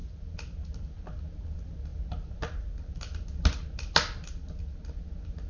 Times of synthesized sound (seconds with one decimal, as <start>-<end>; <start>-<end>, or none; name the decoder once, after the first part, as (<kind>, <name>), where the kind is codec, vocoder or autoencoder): none